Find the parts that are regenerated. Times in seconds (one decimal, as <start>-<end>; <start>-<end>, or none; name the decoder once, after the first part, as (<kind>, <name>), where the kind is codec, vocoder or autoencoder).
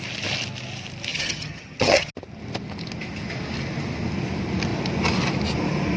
1.1-2.1 (vocoder, HiFi-GAN)